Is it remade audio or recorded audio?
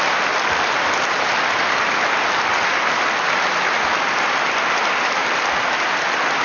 recorded